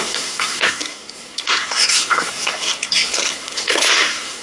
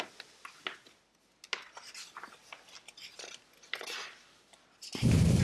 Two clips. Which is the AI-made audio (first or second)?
first